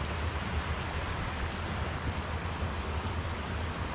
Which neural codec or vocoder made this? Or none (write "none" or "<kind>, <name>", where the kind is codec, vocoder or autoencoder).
none